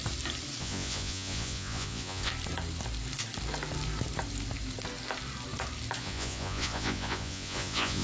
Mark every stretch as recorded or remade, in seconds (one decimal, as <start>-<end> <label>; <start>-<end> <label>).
0.0-0.6 recorded; 0.6-2.3 remade; 2.3-6.0 recorded; 6.0-8.0 remade